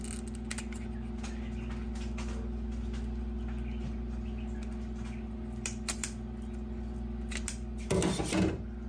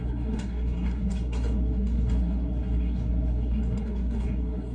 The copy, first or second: second